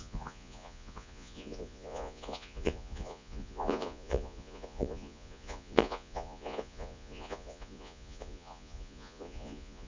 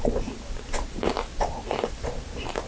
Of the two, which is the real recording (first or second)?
second